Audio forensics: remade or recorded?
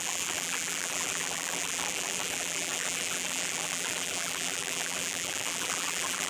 remade